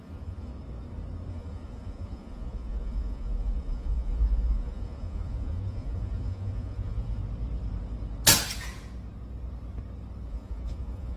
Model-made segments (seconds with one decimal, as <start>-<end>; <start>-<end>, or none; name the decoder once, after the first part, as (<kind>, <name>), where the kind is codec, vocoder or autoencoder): 0.0-0.5 (vocoder, Vocos); 1.3-7.2; 10.3-11.2